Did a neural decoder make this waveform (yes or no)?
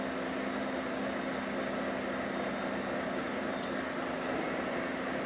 no